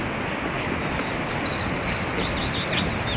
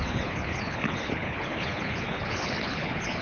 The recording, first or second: first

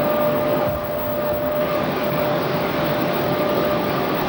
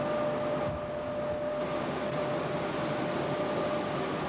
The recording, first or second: second